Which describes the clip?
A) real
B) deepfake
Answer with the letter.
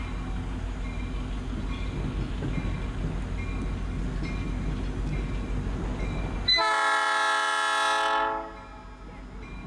A